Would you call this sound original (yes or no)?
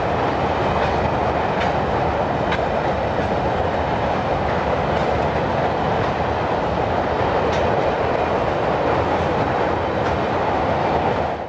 yes